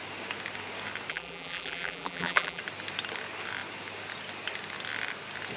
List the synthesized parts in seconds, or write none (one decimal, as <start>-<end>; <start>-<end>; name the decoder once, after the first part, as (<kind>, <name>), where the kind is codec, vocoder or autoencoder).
1.1-2.6 (vocoder, BigVGAN v2)